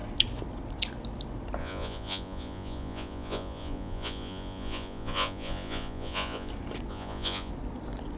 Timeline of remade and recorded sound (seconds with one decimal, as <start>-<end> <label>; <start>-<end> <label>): 0.0-1.6 recorded; 1.6-6.5 remade; 6.5-6.9 recorded; 6.9-7.5 remade; 7.5-8.2 recorded